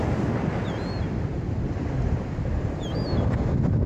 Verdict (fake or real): real